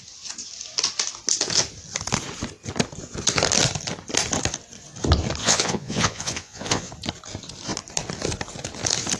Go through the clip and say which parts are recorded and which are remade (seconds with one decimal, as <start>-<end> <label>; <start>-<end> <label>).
0.0-5.4 recorded; 5.4-6.9 remade; 6.9-9.2 recorded